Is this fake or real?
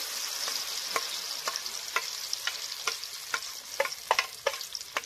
real